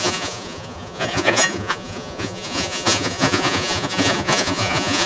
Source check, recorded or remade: remade